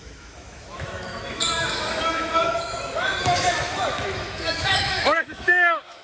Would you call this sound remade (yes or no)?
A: yes